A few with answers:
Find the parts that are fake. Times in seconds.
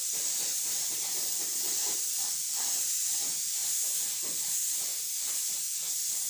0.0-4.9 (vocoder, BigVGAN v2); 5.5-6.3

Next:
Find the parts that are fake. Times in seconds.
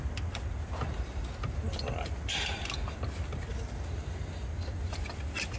none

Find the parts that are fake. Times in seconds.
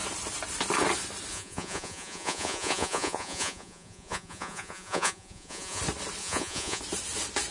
1.3-5.8 (vocoder, Vocos); 6.2-6.8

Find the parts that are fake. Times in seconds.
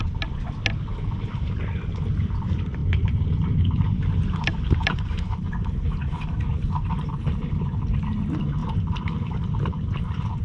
0.9-1.6 (vocoder, BigVGAN v2); 2.8-8.0; 8.6-10.4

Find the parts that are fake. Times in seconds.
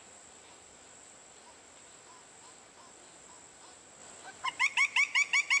none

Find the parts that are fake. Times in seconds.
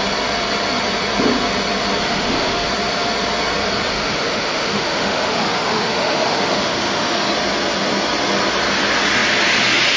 2.0-2.7 (autoencoder, DAC-VAE); 3.9-7.3